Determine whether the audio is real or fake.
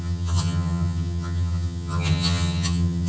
fake